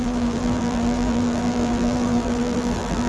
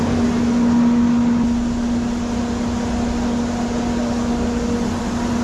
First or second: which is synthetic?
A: first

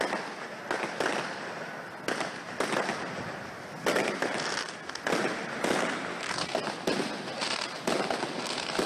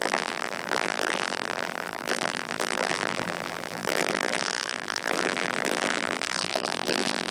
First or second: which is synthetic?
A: second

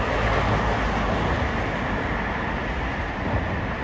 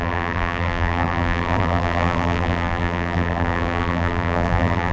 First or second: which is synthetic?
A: second